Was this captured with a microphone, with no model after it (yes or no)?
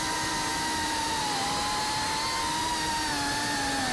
yes